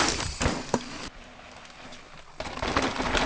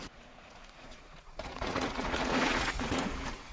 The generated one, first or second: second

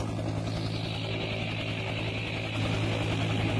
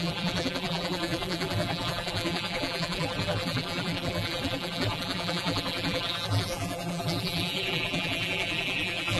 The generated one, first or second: second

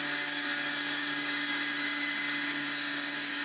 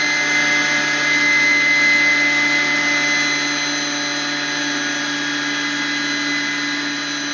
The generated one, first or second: first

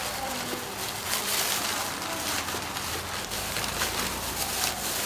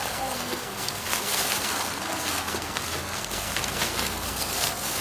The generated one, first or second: second